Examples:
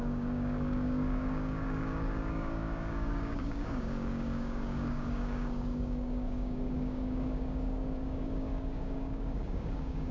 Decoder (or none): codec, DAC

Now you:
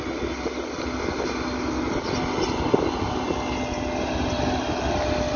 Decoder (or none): none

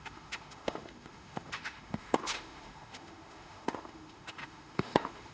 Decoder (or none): autoencoder, DAC-VAE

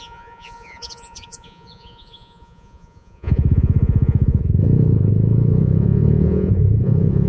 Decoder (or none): vocoder, Vocos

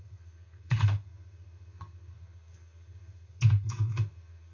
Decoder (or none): codec, SNAC